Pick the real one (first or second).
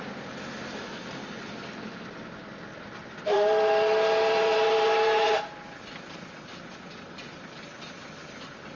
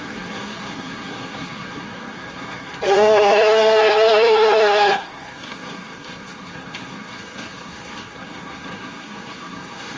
first